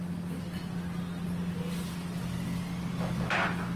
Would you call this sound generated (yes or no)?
no